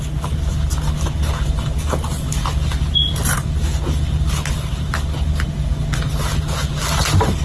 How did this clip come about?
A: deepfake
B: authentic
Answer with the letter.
B